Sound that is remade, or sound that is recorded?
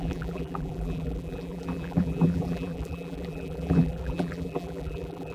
remade